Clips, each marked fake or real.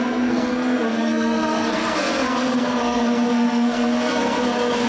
fake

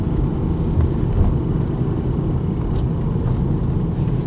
real